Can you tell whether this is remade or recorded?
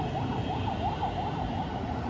recorded